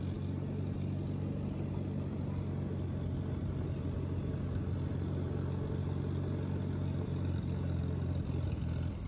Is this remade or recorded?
recorded